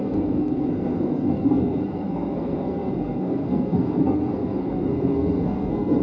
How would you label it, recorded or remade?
remade